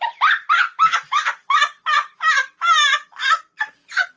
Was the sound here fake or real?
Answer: real